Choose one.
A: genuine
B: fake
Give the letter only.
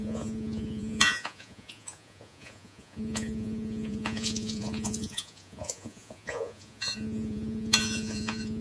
B